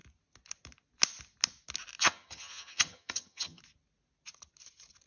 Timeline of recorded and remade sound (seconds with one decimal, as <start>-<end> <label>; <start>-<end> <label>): 0.0-2.0 recorded; 2.0-3.6 remade; 3.6-5.1 recorded